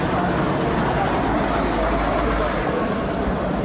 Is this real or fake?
real